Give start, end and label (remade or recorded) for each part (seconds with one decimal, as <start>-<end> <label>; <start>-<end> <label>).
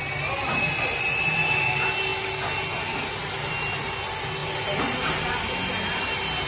0.0-6.5 recorded